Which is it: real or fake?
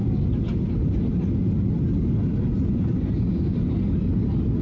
real